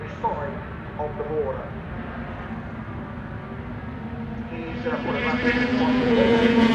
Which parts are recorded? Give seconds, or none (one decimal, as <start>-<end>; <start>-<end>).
0.0-5.7